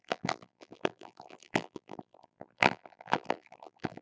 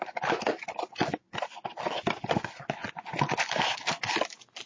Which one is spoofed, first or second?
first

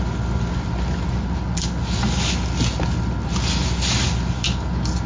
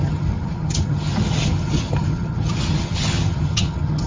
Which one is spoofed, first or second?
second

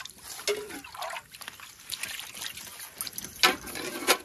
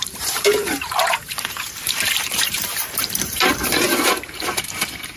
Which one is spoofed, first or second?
second